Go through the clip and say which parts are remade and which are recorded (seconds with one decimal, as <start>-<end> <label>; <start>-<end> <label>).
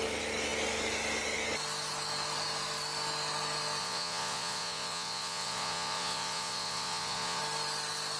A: 0.0-3.8 recorded; 3.8-7.4 remade; 7.4-8.2 recorded